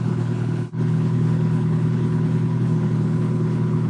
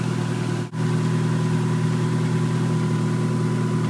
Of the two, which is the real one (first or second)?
second